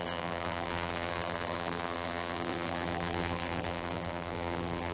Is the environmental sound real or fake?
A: fake